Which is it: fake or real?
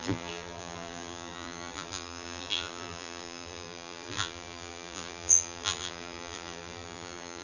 fake